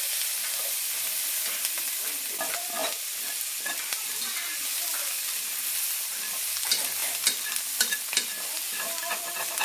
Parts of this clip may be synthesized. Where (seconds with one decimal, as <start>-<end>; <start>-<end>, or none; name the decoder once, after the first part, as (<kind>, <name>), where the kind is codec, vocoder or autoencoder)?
none